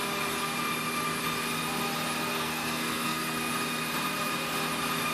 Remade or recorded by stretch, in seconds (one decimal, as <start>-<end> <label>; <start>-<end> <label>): 0.0-2.3 recorded; 2.3-3.5 remade; 3.5-5.1 recorded